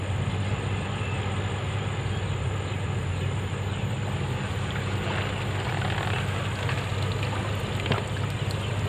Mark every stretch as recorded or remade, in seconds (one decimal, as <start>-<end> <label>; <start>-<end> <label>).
0.0-8.9 recorded